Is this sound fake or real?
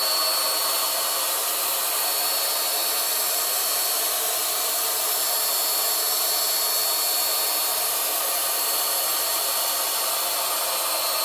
real